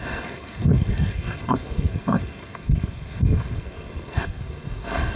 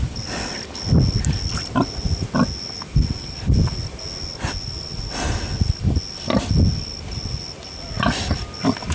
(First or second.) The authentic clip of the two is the second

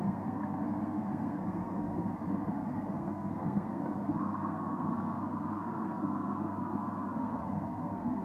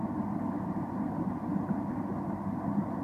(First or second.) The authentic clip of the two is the second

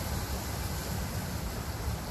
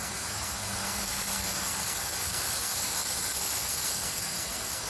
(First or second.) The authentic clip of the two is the first